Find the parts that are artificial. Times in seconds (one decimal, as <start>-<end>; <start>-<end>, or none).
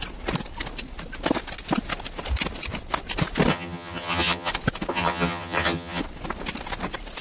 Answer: 3.5-4.5; 4.9-6.0